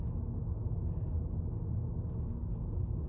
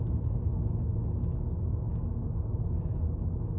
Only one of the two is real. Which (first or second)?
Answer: first